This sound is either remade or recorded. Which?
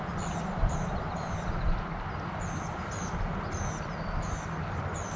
recorded